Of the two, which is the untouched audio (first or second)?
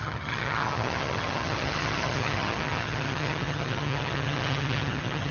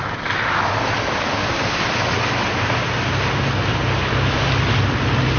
second